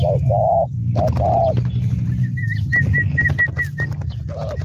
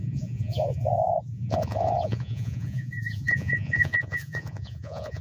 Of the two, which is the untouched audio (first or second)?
first